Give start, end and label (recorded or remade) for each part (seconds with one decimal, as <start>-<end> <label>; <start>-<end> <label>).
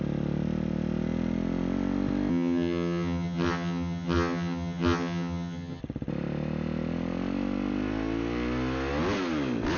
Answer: 0.0-2.3 recorded; 2.3-5.8 remade; 5.8-9.8 recorded